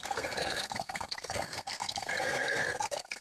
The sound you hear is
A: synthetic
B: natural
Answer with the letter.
A